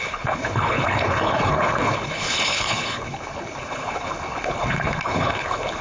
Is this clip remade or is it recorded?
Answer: remade